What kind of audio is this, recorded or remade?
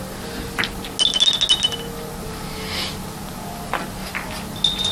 recorded